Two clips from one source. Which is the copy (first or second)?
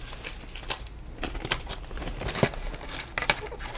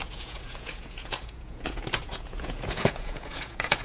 second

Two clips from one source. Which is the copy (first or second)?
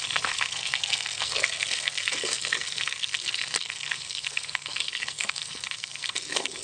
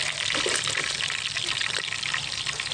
first